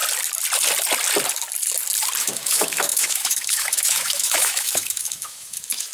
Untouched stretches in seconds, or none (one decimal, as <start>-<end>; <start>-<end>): 0.0-2.2